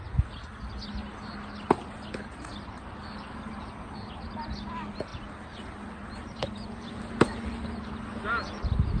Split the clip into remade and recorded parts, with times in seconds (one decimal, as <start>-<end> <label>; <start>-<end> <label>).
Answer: 0.0-9.0 recorded